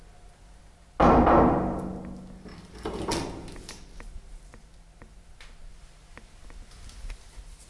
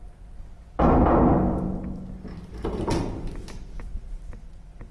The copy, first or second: second